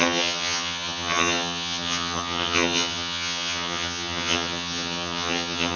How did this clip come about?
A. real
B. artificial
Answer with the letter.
B